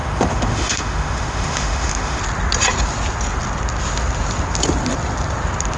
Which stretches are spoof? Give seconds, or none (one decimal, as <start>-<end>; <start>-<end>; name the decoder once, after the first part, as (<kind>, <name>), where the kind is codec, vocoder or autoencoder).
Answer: 0.0-2.2 (autoencoder, DAC-VAE)